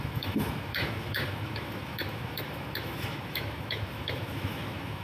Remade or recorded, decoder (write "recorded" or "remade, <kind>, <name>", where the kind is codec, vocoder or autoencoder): remade, autoencoder, DAC-VAE